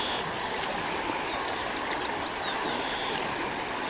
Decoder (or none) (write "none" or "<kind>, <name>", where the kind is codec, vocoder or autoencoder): none